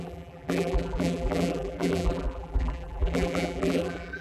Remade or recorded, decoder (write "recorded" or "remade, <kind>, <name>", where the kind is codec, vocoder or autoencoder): remade, vocoder, BigVGAN v2